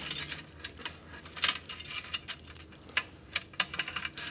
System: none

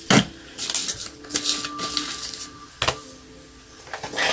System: none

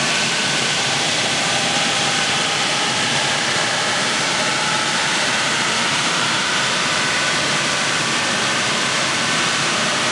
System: vocoder, BigVGAN v2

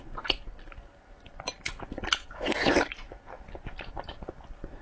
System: none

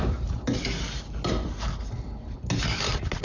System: none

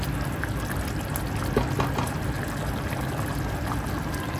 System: none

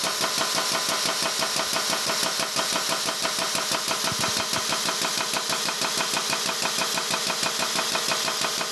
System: none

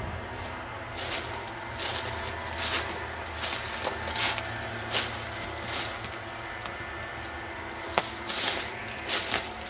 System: none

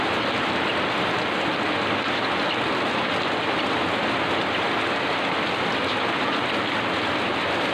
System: none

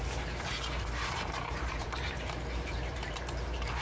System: vocoder, BigVGAN v2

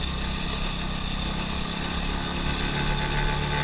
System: none